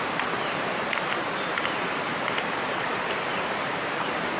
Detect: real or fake fake